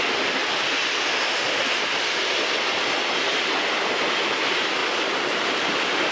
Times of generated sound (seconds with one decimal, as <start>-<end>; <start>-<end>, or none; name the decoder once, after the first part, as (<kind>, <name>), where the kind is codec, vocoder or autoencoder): none